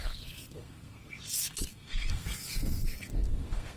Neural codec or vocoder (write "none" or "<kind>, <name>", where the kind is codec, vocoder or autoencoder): codec, SNAC